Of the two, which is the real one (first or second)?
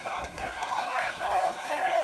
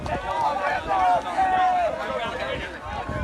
second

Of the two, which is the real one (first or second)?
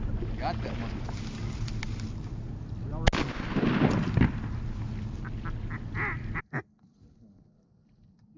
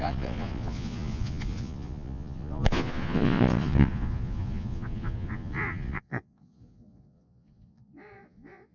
first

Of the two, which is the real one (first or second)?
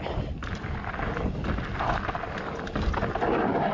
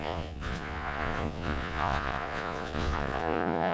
first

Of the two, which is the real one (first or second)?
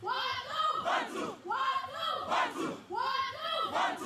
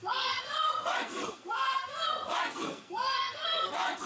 first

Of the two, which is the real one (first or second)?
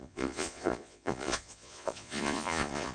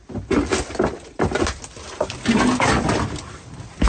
second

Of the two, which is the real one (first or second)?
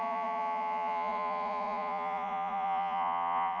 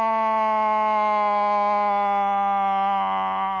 second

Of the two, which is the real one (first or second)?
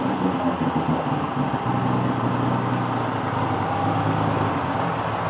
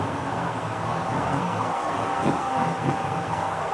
first